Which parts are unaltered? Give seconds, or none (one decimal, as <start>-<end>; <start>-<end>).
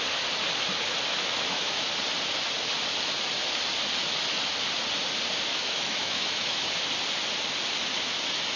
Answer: 0.0-1.1; 1.8-5.5; 6.7-8.6